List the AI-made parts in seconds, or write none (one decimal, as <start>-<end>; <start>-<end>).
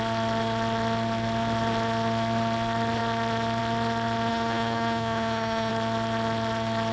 4.3-5.7